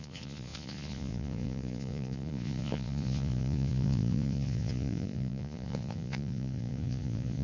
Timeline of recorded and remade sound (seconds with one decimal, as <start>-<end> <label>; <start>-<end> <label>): 0.0-7.4 remade